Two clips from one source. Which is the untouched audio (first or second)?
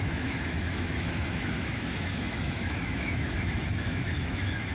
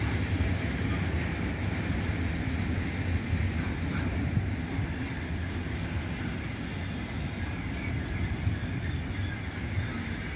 second